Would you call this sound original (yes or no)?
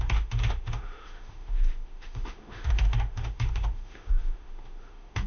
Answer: no